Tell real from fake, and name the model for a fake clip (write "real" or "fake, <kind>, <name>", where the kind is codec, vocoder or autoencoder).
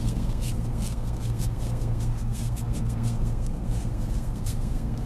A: fake, codec, SNAC